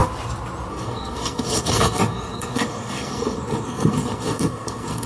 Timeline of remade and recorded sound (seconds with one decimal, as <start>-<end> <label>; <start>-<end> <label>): 0.0-0.7 recorded; 0.7-5.1 remade